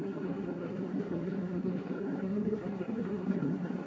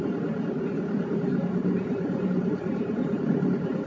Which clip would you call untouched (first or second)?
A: second